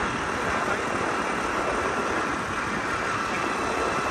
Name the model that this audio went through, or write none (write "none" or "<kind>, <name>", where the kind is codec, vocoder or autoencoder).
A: none